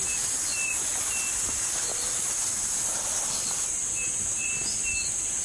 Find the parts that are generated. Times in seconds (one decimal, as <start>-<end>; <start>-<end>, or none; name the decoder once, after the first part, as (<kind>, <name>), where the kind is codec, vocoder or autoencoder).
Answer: none

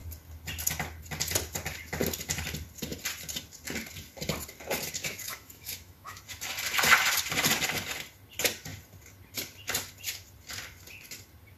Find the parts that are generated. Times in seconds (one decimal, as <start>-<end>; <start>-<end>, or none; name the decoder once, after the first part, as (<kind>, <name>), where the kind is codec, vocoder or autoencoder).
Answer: 5.0-6.2 (autoencoder, DAC-VAE)